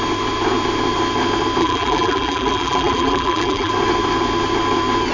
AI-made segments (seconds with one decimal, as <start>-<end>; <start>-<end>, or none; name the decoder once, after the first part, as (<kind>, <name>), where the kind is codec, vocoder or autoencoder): 1.6-3.7 (vocoder, BigVGAN v2)